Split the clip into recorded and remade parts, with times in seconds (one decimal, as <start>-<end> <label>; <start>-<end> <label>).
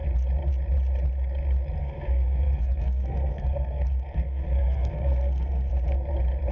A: 0.0-1.8 recorded; 1.8-5.7 remade; 5.7-6.5 recorded